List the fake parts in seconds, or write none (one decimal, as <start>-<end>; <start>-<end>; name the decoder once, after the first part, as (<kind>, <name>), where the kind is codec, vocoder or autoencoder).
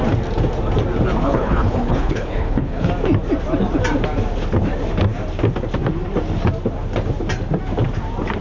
1.2-2.9 (codec, HILCodec)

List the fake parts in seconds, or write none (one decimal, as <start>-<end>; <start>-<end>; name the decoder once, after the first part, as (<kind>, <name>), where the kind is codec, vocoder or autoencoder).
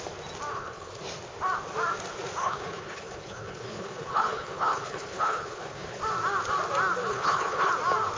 0.5-1.0 (codec, HILCodec); 2.4-6.0; 7.1-7.7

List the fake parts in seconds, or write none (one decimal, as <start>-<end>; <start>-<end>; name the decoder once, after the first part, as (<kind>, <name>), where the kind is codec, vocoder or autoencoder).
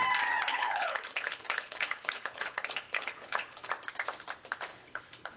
0.5-3.7 (codec, HILCodec); 4.7-5.4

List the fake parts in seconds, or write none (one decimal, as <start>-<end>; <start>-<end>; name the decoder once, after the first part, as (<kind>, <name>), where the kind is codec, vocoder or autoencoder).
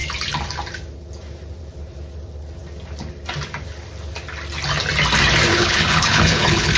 5.5-6.8 (codec, HILCodec)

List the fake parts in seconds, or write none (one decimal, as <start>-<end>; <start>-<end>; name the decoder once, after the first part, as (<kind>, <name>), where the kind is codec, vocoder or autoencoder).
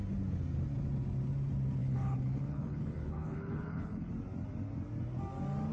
1.8-4.1 (codec, HILCodec)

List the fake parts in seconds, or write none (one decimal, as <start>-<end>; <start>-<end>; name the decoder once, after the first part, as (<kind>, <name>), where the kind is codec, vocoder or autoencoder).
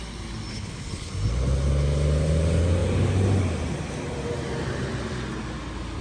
0.5-1.1 (codec, HILCodec)